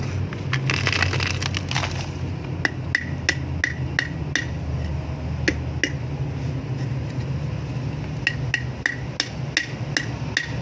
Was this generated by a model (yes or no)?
no